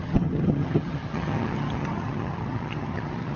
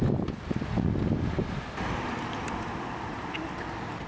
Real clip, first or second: second